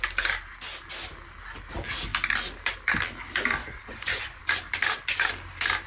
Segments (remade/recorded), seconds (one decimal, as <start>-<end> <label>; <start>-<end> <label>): 0.0-3.6 recorded; 3.6-4.4 remade; 4.4-5.9 recorded